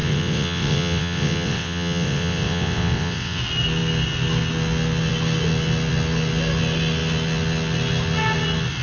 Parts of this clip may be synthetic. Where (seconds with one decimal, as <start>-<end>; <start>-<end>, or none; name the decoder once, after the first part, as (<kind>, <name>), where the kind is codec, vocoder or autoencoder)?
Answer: 0.0-3.4 (vocoder, WaveNeXt)